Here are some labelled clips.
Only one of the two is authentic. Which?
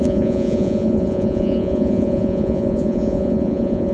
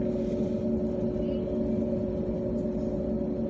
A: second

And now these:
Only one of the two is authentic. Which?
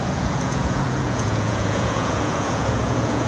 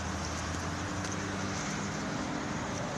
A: second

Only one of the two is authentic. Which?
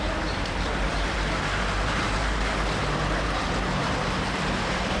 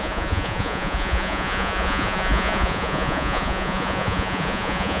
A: first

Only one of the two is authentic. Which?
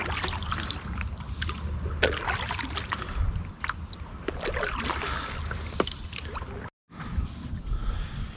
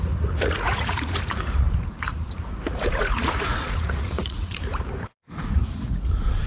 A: first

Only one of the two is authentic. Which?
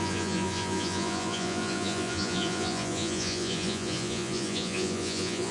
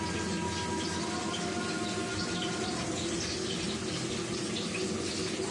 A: second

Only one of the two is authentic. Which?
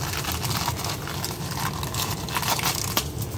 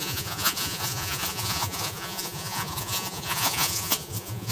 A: first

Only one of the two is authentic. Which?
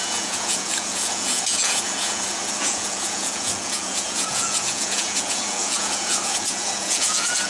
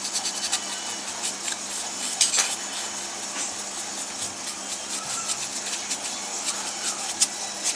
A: second